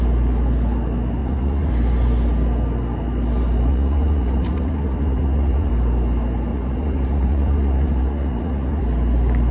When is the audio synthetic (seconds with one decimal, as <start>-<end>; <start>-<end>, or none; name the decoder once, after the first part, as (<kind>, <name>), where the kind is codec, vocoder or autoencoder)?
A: 1.2-1.7 (vocoder, Vocos); 3.7-5.7; 6.5-8.8